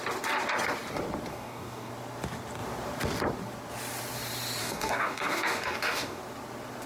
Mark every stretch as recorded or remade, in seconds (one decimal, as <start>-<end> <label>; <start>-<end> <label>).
0.0-1.3 recorded; 1.3-1.9 remade; 1.9-4.6 recorded; 4.6-6.2 remade; 6.2-6.9 recorded